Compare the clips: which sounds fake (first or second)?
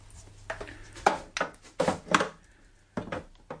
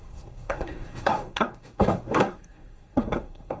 second